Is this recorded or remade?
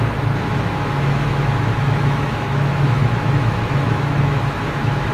remade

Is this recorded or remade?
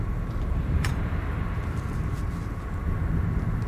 remade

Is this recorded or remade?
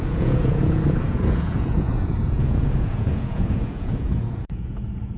remade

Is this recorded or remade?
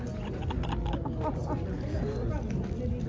recorded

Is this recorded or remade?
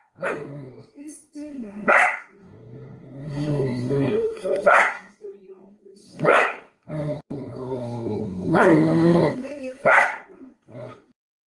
remade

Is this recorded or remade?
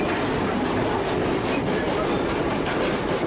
recorded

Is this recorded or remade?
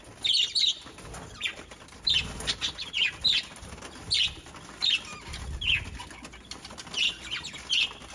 recorded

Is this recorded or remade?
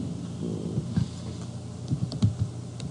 recorded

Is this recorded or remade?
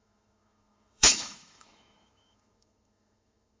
remade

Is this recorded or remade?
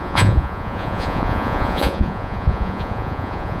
remade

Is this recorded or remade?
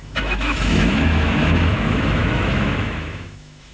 remade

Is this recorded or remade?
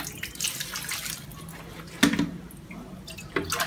recorded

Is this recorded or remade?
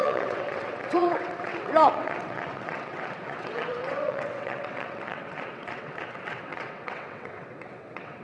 remade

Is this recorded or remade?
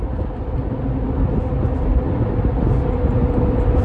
recorded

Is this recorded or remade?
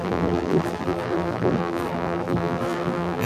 remade